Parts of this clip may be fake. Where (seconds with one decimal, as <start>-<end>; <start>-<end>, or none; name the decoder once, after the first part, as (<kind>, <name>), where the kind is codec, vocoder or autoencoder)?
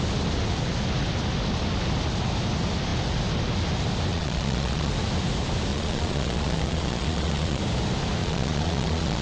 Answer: 4.1-4.9 (vocoder, Vocos); 5.7-7.6; 8.2-9.2